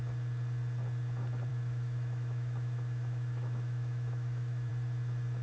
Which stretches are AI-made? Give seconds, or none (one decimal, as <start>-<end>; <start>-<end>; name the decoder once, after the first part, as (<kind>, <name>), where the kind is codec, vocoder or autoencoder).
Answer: 1.5-4.7 (autoencoder, DAC-VAE)